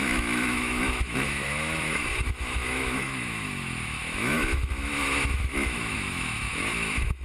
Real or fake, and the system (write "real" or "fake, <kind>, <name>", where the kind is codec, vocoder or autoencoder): fake, autoencoder, DAC-VAE